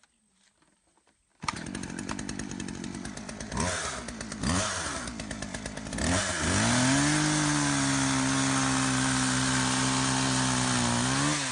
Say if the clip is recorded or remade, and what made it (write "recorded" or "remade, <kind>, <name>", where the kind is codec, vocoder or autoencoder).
recorded